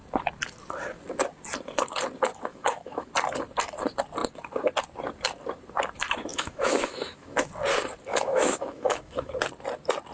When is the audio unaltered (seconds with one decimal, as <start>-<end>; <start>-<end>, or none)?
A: 0.0-2.5; 3.1-6.3; 7.5-8.1; 9.3-10.1